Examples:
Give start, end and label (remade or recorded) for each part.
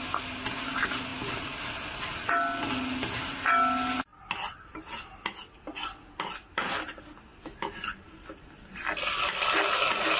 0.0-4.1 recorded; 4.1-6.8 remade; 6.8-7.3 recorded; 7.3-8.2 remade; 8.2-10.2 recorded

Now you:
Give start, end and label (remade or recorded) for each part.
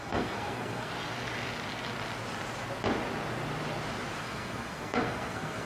0.0-0.9 remade; 0.9-4.2 recorded; 4.2-5.7 remade